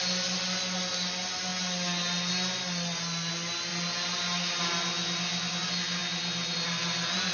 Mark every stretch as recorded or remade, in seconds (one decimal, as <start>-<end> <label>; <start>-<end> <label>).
0.0-7.3 recorded